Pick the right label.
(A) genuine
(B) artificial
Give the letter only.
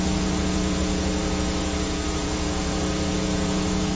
B